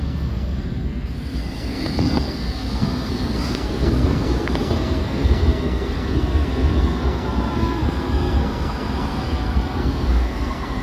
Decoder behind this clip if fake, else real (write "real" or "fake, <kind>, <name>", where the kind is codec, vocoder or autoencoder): fake, codec, SNAC